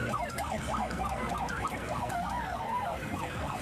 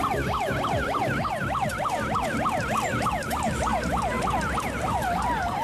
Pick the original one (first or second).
second